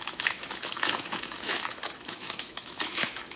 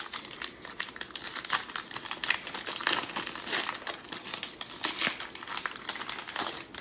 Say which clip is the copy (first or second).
first